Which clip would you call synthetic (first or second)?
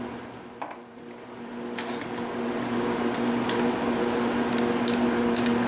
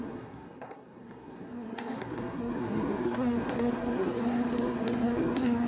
second